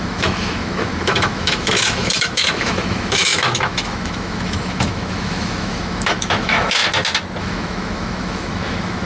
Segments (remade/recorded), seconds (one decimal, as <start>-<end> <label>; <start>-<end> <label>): 0.0-6.8 remade; 6.8-7.4 recorded; 7.4-9.1 remade